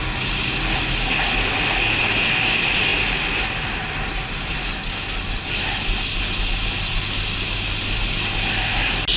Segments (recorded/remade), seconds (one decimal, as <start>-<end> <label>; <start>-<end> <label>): 0.0-9.2 recorded

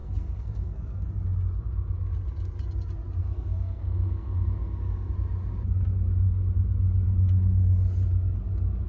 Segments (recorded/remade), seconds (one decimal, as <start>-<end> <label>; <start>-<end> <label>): 0.0-1.1 remade; 1.1-3.2 recorded; 3.2-5.1 remade; 5.1-8.9 recorded

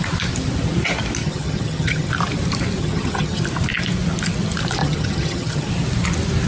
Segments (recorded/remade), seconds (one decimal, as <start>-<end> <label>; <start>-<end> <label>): 0.0-1.2 recorded; 1.2-2.1 remade; 2.1-2.8 recorded; 2.8-3.4 remade; 3.4-4.8 recorded; 4.8-5.7 remade; 5.7-6.5 recorded

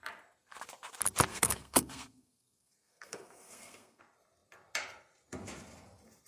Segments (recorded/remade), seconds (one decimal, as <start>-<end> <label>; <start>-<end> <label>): 0.0-1.3 recorded; 1.3-4.0 remade; 4.0-6.3 recorded